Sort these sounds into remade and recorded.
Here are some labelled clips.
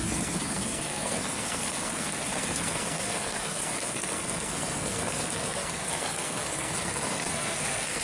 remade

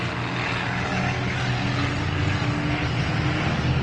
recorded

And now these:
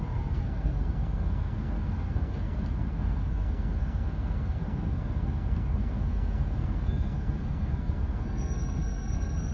remade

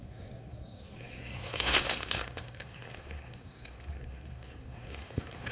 remade